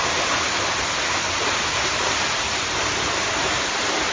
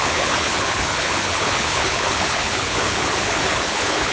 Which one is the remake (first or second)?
second